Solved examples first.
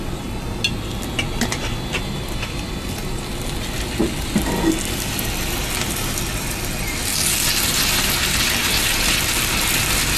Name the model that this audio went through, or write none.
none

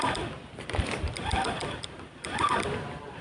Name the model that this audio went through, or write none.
vocoder, BigVGAN v2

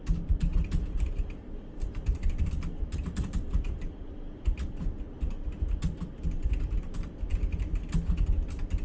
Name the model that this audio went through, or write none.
vocoder, BigVGAN v2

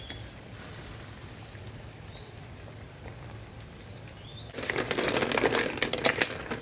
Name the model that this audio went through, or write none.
none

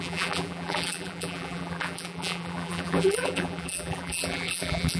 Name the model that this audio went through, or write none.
vocoder, BigVGAN v2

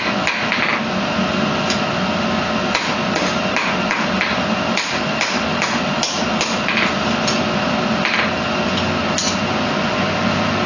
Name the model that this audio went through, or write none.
none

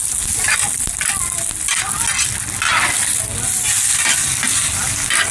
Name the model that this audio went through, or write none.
none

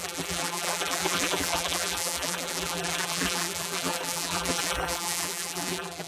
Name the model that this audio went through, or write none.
vocoder, BigVGAN v2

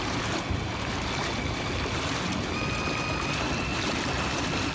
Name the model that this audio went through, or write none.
none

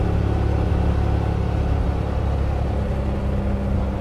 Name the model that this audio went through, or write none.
none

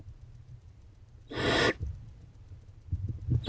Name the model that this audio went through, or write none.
vocoder, BigVGAN v2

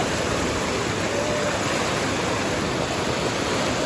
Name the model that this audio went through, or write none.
none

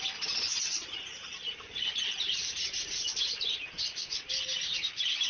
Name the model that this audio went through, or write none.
vocoder, BigVGAN v2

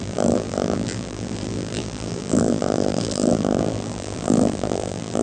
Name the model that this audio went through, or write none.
vocoder, BigVGAN v2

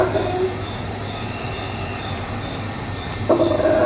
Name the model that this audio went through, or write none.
vocoder, BigVGAN v2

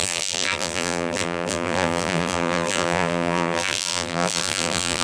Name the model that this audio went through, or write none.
vocoder, BigVGAN v2